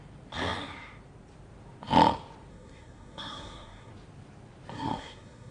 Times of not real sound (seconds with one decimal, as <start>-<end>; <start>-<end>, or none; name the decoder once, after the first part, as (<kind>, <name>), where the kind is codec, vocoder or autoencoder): 2.5-3.9 (codec, SNAC); 4.7-5.5

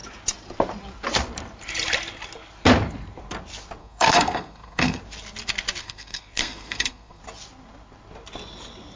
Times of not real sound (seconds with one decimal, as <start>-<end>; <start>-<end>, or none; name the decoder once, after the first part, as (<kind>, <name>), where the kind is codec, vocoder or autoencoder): 3.8-5.0 (codec, SNAC); 5.8-7.2

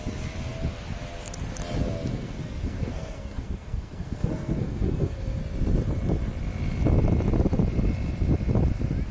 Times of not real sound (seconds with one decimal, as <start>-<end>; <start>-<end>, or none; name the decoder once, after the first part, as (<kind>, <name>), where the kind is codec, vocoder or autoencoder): 2.1-5.4 (codec, SNAC)

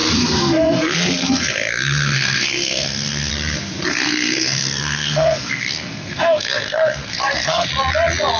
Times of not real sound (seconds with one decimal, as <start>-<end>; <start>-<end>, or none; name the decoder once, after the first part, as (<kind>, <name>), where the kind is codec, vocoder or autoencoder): 0.0-3.3 (codec, SNAC); 3.9-7.7

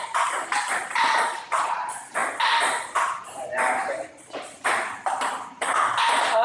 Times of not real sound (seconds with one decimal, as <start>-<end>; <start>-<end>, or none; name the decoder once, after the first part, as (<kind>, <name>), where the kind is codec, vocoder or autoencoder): none

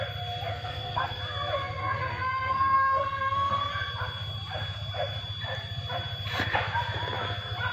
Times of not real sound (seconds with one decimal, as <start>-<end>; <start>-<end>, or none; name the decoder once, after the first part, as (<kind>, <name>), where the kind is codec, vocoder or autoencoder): 0.5-1.2 (codec, SNAC); 1.8-3.7